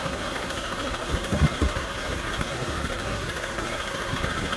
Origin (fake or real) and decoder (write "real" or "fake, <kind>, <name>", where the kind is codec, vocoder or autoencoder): fake, codec, SNAC